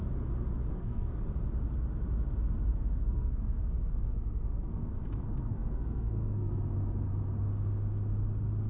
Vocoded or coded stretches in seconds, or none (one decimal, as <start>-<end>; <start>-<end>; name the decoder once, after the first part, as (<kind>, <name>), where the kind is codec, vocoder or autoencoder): 0.7-1.2 (codec, SNAC); 2.7-6.5